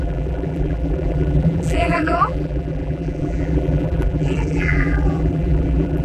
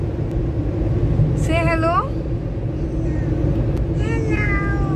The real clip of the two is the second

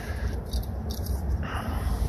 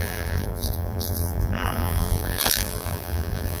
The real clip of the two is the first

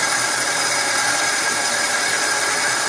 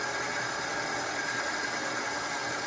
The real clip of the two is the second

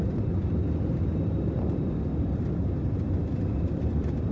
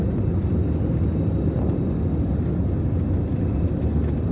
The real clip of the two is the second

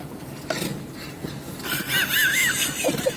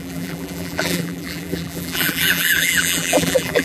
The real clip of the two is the first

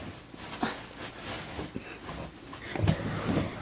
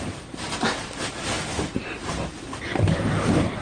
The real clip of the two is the first